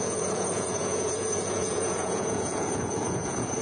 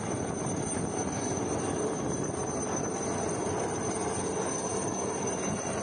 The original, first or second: second